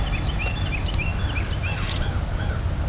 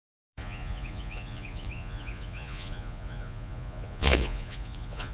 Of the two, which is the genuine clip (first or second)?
first